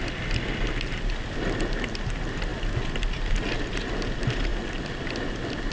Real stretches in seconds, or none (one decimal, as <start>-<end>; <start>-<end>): 0.0-5.7